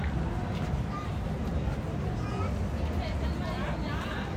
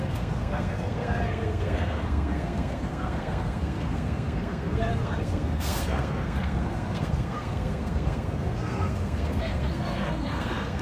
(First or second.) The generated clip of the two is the second